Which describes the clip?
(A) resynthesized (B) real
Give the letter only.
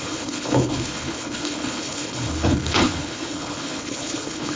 A